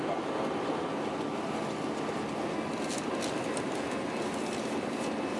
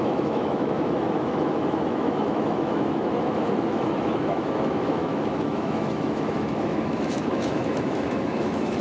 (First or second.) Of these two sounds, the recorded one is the first